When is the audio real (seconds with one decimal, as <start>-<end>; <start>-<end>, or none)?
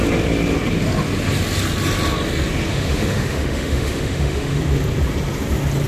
0.0-2.7; 4.6-5.9